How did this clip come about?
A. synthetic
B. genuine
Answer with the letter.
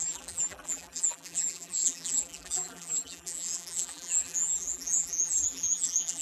A